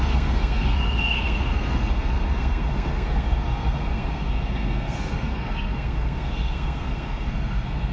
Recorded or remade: remade